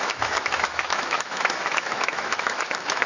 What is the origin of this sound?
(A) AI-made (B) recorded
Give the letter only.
A